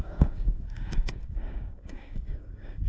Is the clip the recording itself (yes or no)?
no